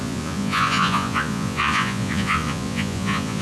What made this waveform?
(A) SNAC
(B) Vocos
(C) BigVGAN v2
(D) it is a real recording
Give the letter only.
B